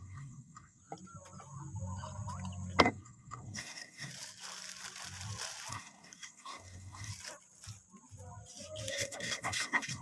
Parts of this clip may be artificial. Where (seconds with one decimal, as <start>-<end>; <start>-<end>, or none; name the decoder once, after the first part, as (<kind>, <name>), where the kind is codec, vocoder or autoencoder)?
0.0-0.8 (codec, SNAC); 2.8-4.1; 5.7-7.1; 8.9-10.0